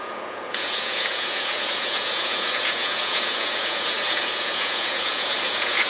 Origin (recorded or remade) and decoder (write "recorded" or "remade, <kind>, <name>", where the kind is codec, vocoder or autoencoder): remade, vocoder, Vocos